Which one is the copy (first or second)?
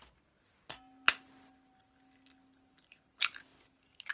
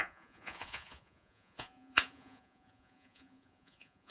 second